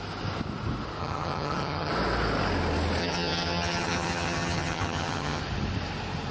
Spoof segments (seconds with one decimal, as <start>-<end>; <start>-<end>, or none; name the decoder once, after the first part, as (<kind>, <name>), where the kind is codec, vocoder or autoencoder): 1.0-1.9 (vocoder, HiFi-GAN); 3.0-5.4